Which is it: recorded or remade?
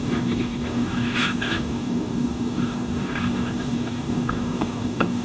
remade